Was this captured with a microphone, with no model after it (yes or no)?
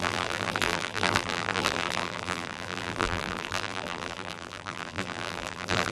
no